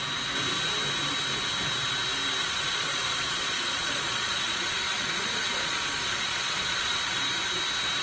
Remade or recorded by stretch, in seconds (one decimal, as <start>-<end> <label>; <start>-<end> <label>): 0.0-2.4 recorded; 2.4-7.2 remade; 7.2-8.0 recorded